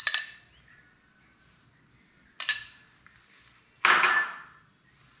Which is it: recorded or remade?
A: recorded